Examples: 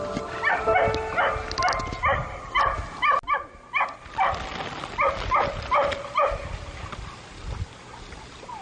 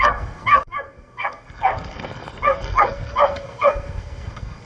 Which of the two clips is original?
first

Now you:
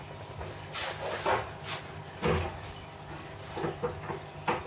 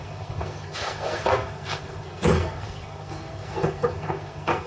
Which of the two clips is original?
first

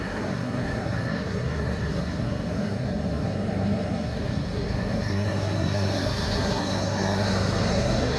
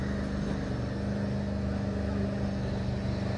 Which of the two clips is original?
second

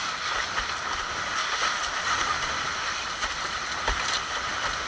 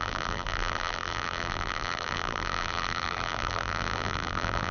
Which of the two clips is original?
first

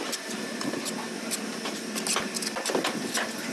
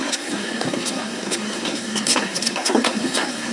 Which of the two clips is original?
first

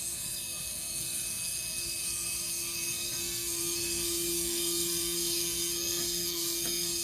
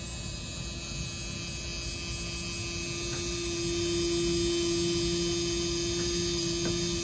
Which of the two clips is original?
second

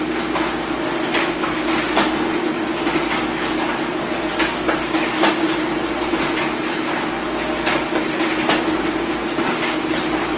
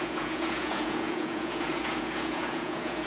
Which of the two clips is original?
first